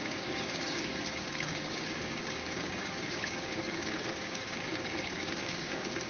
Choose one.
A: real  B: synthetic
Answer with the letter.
B